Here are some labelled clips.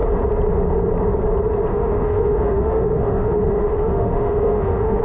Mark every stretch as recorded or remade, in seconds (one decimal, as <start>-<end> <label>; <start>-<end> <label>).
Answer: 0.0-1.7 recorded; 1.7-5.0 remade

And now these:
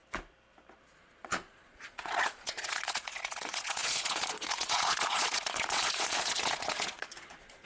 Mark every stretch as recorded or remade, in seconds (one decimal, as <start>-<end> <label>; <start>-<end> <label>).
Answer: 0.0-0.9 recorded; 0.9-7.7 remade

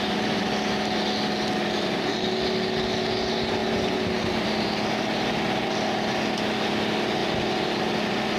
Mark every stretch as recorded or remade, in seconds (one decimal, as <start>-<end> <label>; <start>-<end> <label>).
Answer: 0.0-8.4 recorded